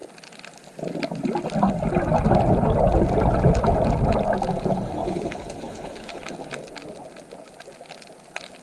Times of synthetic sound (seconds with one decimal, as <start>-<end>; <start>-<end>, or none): 5.0-6.2